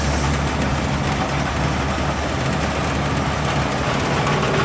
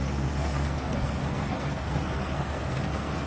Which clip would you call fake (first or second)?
second